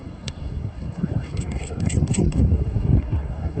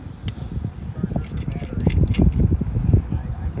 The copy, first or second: first